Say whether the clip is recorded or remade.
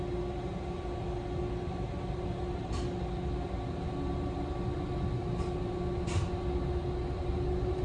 recorded